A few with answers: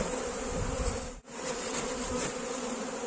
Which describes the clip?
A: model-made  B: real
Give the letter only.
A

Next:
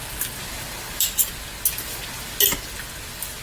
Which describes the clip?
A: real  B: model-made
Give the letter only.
A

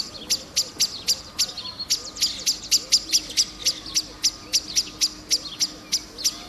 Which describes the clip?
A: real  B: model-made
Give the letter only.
A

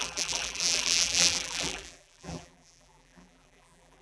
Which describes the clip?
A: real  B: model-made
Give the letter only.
B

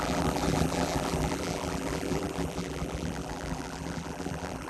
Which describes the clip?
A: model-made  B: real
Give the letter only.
A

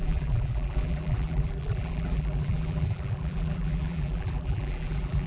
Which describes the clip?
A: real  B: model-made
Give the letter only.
B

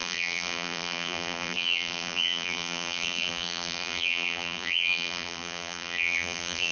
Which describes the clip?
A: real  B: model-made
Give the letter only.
B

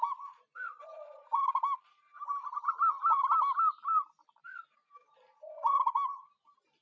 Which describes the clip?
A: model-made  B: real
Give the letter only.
B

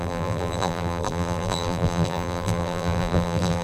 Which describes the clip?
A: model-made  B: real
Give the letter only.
A